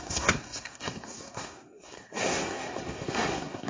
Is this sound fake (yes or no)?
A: yes